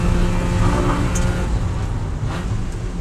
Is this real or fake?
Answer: real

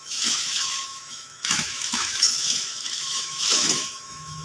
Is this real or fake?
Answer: fake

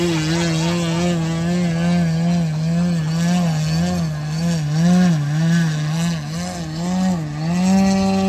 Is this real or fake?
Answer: real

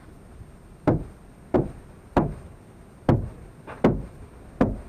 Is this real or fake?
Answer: real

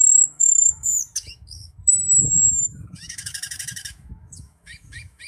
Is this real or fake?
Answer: fake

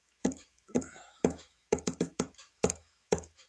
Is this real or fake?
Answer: fake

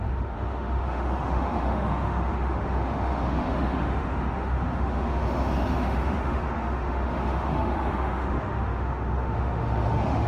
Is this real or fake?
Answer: fake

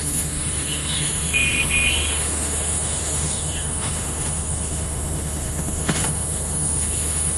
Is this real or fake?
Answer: fake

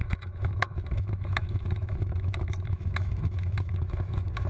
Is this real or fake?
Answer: fake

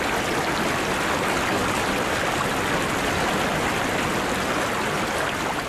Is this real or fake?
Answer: real